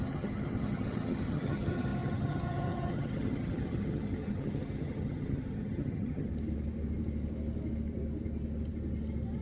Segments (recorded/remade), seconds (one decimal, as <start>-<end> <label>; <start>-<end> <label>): 0.0-6.3 remade; 6.3-9.4 recorded